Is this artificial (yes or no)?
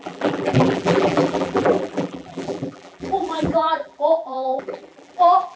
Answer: yes